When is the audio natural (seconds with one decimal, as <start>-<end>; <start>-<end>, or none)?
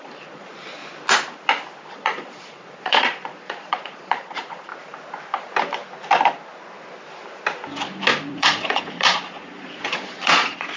0.8-1.9; 4.7-8.3